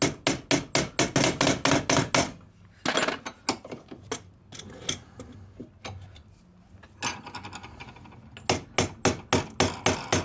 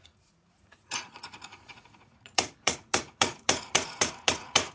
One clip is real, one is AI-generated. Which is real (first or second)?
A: first